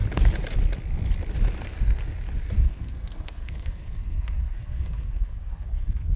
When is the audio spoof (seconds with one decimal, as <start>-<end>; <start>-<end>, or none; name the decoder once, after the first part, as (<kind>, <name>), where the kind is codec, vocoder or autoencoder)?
2.6-6.2 (codec, SNAC)